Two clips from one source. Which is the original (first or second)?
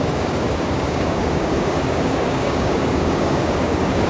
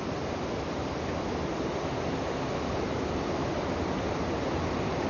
second